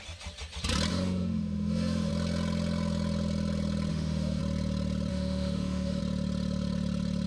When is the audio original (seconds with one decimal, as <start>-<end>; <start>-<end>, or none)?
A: 0.0-0.9; 2.1-3.9; 4.4-5.1; 6.0-7.3